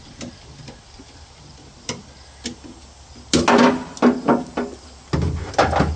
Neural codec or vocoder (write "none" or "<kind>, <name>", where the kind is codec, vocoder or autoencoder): none